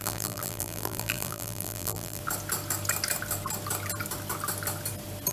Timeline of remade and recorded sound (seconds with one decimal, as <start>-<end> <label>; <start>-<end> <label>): 0.0-2.2 remade; 2.2-5.3 recorded